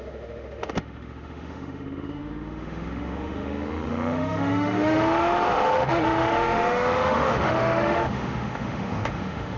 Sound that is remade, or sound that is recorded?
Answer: remade